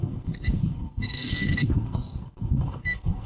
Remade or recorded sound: remade